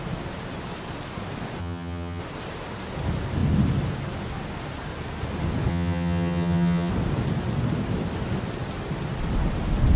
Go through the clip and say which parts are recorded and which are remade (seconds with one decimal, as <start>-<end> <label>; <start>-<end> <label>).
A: 0.0-1.6 recorded; 1.6-2.2 remade; 2.2-5.7 recorded; 5.7-6.9 remade; 6.9-10.0 recorded